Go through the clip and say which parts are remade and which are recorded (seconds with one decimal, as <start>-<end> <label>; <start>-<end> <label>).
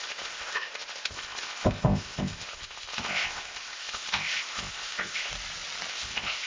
0.0-5.3 remade; 5.3-5.9 recorded; 5.9-6.5 remade